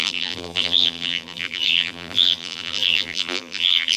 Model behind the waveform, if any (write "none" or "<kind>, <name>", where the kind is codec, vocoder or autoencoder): vocoder, BigVGAN v2